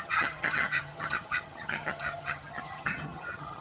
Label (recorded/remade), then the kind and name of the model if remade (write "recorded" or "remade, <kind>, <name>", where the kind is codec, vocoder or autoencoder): remade, vocoder, HiFi-GAN